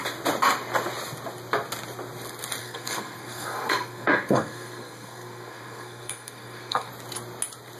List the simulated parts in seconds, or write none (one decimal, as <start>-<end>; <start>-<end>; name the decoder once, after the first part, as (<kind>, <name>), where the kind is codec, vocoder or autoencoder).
2.6-6.9 (codec, SNAC)